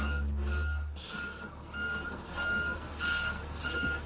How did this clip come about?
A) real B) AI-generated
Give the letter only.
B